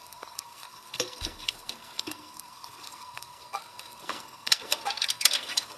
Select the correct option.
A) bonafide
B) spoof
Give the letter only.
B